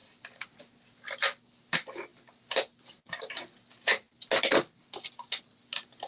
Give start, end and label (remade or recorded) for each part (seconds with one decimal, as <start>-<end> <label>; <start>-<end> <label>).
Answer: 0.0-6.1 recorded